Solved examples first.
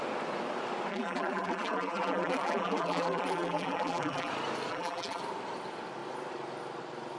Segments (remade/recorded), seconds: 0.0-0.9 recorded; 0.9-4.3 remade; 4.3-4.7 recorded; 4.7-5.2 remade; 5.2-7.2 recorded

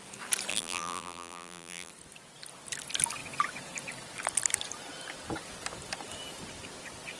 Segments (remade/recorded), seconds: 0.0-0.5 recorded; 0.5-1.9 remade; 1.9-7.2 recorded

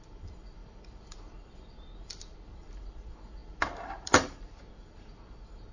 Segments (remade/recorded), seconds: 0.0-5.7 remade

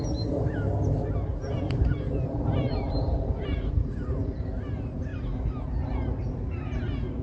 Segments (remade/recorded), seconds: 0.0-1.4 recorded; 1.4-4.4 remade; 4.4-5.1 recorded; 5.1-6.3 remade; 6.3-7.2 recorded